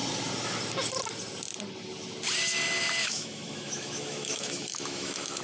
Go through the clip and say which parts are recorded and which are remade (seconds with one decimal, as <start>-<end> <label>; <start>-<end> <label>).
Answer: 0.0-3.0 recorded; 3.0-5.4 remade